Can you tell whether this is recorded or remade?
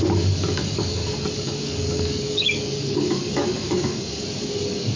remade